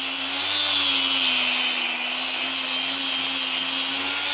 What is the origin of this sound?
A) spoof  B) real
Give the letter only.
B